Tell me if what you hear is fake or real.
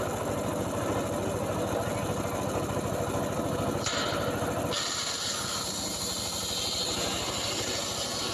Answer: real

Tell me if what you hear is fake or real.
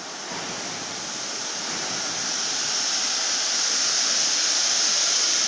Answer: real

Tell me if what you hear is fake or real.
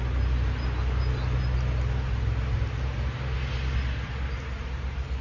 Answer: real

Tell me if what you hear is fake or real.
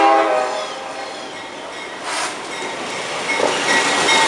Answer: real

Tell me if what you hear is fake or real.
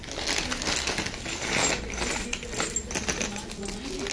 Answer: real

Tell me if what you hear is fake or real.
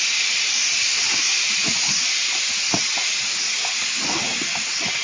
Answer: real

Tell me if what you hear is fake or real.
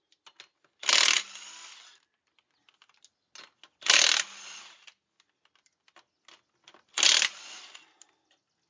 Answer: real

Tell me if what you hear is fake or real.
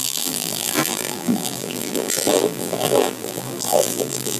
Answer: fake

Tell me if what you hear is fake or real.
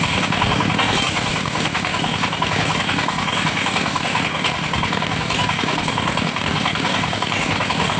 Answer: fake